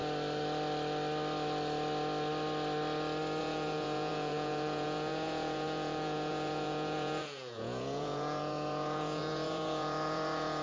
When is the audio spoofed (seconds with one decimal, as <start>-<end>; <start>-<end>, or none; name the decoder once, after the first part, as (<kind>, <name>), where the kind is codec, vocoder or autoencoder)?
3.4-10.6 (vocoder, Vocos)